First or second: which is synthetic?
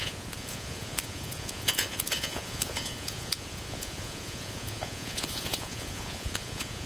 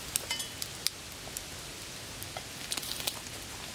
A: first